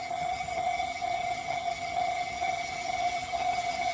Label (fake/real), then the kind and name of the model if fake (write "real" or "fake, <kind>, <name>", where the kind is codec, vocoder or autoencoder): fake, vocoder, HiFi-GAN